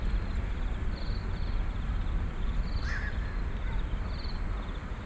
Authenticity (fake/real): real